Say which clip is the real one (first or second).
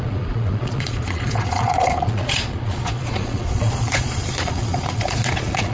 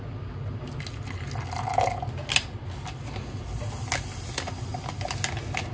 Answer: second